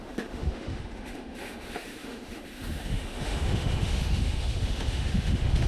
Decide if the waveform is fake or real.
fake